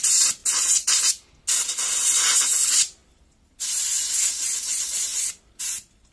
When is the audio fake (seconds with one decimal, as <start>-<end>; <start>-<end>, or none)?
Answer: 3.0-3.8